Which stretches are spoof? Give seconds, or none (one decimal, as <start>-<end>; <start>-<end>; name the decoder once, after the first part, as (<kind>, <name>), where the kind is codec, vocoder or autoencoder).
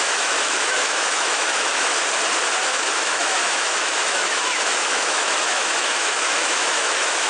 0.0-1.9 (autoencoder, DAC-VAE); 2.6-7.3